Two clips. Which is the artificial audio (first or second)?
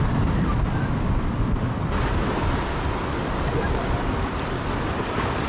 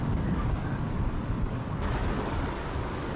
second